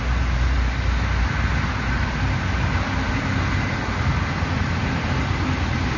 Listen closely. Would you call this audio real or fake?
real